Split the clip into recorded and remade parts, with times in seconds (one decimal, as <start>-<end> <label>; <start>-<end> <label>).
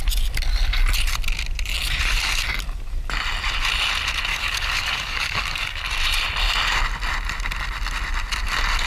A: 0.0-4.3 recorded; 4.3-5.8 remade; 5.8-8.9 recorded